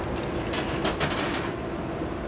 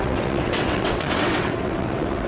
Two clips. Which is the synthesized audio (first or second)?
second